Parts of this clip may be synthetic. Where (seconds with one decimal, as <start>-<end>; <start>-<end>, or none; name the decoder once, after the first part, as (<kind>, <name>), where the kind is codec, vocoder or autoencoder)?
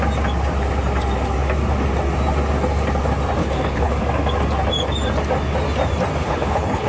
3.4-4.0 (codec, HILCodec); 6.2-6.9